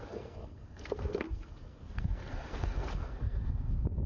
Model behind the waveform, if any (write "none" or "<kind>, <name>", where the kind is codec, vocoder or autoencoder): codec, SNAC